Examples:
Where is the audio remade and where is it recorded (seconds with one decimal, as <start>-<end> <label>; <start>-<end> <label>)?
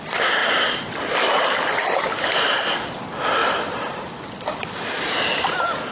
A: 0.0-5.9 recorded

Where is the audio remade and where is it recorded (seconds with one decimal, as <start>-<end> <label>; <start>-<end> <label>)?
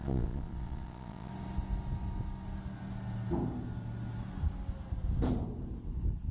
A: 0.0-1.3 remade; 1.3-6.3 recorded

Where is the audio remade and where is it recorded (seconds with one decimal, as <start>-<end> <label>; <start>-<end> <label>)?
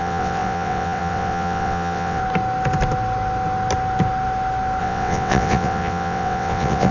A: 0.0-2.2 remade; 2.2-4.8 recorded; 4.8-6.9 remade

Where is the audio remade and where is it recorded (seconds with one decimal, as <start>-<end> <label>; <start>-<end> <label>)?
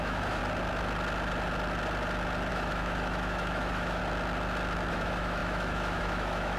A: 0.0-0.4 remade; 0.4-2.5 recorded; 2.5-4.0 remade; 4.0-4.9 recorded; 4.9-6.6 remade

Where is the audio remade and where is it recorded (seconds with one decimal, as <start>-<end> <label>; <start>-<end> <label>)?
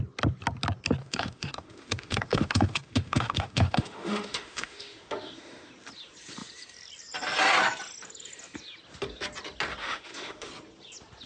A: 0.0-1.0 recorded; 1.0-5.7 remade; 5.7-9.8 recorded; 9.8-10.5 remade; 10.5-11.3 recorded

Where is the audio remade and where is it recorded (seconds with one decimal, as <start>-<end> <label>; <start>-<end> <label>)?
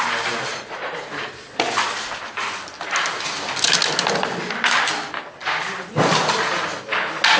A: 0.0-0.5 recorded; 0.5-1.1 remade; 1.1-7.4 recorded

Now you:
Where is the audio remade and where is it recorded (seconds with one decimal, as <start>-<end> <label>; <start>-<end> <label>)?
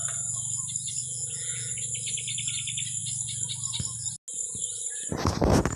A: 0.0-1.0 recorded; 1.0-1.7 remade; 1.7-5.8 recorded